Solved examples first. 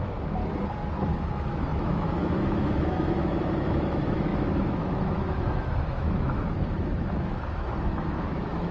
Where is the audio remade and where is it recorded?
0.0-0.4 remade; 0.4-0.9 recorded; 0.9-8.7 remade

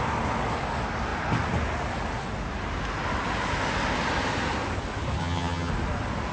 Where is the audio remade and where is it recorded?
0.0-5.2 recorded; 5.2-5.7 remade; 5.7-6.3 recorded

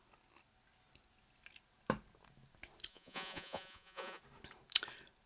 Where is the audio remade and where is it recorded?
0.0-2.9 recorded; 2.9-4.2 remade; 4.2-5.3 recorded

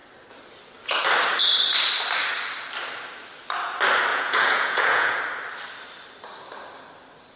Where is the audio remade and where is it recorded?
0.0-4.1 recorded; 4.1-5.2 remade; 5.2-7.4 recorded

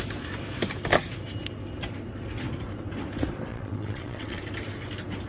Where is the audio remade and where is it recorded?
0.0-3.5 recorded; 3.5-4.4 remade; 4.4-5.3 recorded